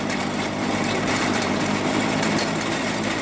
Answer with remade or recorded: remade